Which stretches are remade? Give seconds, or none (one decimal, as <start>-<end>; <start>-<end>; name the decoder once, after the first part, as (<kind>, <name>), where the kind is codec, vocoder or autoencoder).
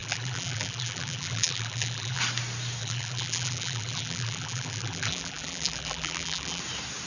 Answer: 0.0-2.2 (vocoder, BigVGAN v2); 2.8-6.6